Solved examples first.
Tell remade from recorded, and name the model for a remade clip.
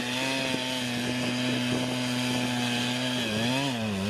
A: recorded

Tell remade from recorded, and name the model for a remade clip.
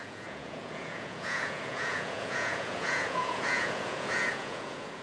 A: remade, vocoder, Vocos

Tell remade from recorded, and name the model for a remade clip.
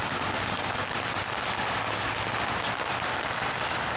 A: recorded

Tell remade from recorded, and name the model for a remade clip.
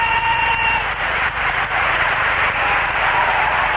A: remade, vocoder, Vocos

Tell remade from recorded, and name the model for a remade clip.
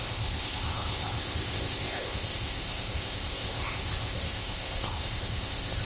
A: remade, codec, ZipCodec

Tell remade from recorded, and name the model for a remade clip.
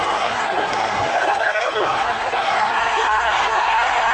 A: remade, codec, SNAC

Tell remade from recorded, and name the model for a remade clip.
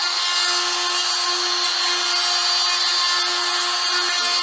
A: recorded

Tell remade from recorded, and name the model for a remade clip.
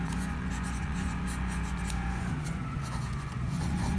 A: remade, vocoder, Vocos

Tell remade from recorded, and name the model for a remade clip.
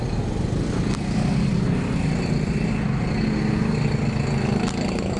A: recorded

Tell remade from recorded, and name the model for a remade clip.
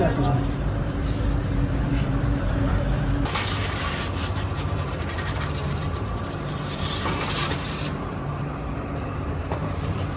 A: remade, vocoder, BigVGAN v2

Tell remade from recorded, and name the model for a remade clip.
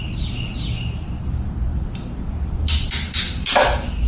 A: recorded